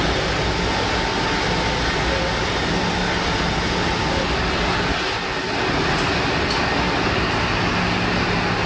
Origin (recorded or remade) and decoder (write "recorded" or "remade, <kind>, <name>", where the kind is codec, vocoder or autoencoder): recorded